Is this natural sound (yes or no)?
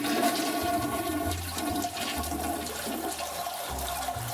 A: no